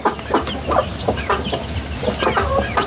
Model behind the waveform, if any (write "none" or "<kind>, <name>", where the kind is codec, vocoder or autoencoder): none